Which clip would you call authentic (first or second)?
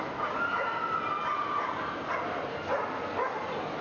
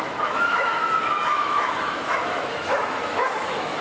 first